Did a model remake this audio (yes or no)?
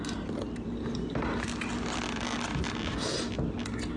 no